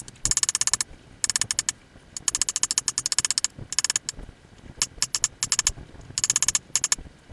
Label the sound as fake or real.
real